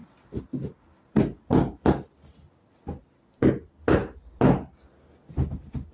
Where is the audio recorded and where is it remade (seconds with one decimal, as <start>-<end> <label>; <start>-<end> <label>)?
0.0-5.9 recorded